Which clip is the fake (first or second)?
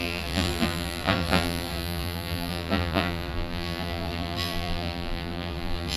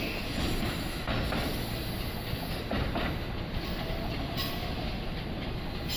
first